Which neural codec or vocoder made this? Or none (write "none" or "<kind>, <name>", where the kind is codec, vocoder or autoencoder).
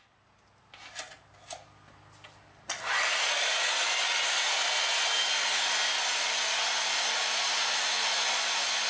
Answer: none